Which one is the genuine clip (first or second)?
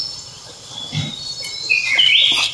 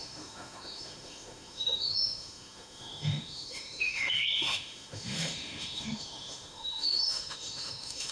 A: first